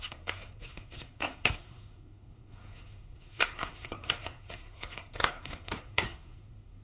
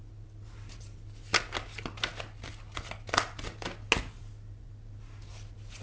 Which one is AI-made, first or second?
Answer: first